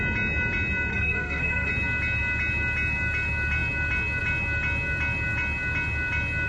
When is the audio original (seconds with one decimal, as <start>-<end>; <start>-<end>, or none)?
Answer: 0.0-0.9; 1.7-6.5